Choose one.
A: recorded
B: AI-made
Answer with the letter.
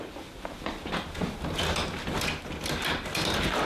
A